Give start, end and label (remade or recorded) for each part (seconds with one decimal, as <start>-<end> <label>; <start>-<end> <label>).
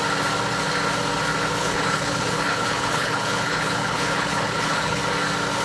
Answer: 0.0-1.6 recorded; 1.6-5.0 remade; 5.0-5.6 recorded